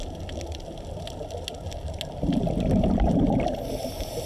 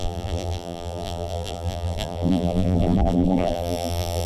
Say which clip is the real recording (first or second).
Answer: first